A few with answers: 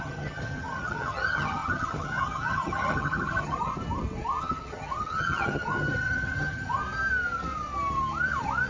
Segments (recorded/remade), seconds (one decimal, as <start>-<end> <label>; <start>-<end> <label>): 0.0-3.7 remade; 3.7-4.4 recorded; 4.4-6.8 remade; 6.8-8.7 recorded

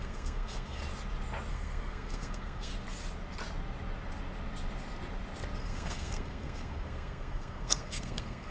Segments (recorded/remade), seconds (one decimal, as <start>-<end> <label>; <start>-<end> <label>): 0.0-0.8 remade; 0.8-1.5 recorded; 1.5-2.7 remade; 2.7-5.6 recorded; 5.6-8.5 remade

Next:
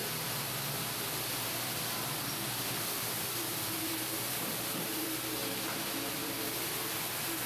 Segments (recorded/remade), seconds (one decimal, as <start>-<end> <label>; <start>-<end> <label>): 0.0-5.4 remade; 5.4-6.1 recorded; 6.1-7.5 remade

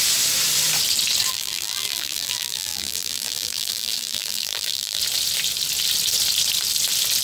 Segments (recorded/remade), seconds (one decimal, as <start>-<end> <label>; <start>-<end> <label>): 0.0-1.3 recorded; 1.3-5.0 remade; 5.0-7.2 recorded

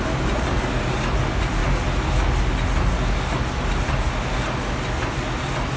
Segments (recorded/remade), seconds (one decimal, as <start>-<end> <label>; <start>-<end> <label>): 0.0-5.8 recorded

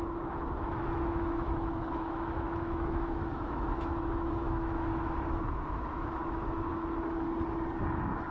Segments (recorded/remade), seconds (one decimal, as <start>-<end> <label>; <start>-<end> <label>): 0.0-6.7 remade; 6.7-7.9 recorded; 7.9-8.3 remade